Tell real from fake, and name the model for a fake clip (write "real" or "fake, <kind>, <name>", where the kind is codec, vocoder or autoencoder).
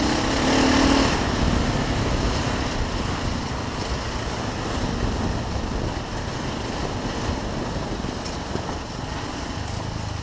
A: real